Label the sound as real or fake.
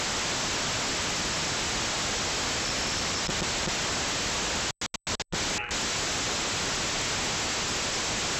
real